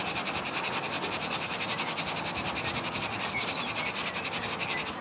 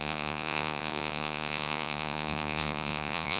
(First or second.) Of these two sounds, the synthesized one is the second